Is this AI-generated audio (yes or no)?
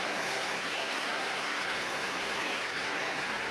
yes